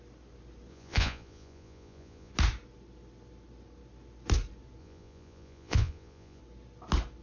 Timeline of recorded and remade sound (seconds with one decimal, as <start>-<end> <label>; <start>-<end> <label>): 0.0-0.7 recorded; 0.7-2.3 remade; 2.3-4.8 recorded; 4.8-6.4 remade; 6.4-7.2 recorded